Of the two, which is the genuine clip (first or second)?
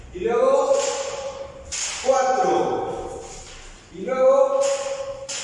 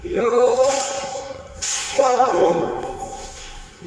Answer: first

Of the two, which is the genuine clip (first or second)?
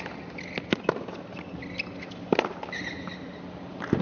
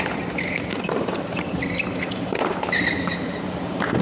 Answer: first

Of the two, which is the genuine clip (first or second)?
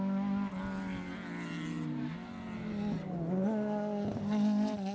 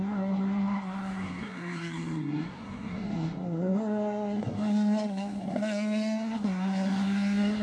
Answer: first